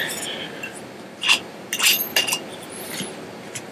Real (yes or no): yes